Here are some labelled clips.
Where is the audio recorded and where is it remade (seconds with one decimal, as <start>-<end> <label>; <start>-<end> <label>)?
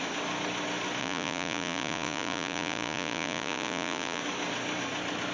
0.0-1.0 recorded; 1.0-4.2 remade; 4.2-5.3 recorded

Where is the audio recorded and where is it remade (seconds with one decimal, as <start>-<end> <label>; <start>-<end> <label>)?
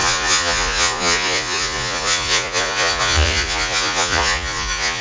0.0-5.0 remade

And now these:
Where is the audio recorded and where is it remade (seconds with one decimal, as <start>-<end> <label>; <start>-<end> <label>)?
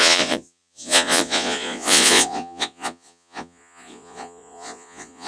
0.0-5.3 remade